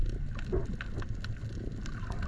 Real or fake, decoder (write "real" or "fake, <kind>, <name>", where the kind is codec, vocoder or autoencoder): real